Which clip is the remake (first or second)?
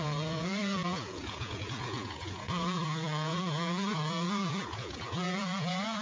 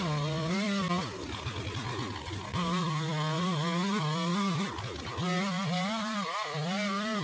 first